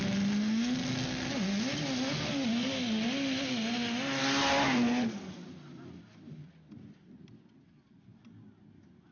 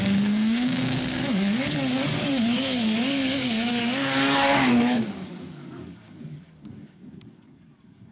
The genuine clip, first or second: first